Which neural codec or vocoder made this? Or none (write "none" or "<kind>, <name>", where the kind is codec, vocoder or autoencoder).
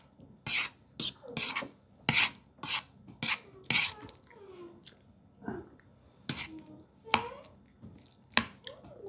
none